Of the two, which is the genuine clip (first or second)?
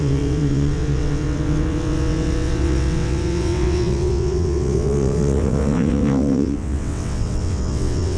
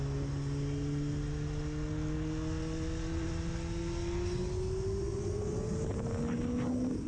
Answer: second